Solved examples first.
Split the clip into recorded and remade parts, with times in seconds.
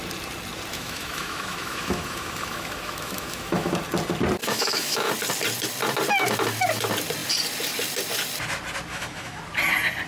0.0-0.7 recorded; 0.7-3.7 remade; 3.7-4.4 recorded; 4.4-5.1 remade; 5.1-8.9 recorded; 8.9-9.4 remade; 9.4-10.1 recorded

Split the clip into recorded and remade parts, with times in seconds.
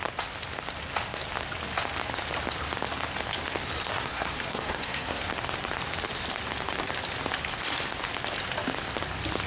0.0-3.9 recorded; 3.9-5.3 remade; 5.3-9.5 recorded